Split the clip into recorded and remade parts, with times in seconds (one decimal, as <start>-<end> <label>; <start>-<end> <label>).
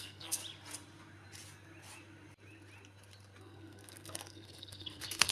0.0-0.4 remade; 0.4-3.4 recorded; 3.4-5.3 remade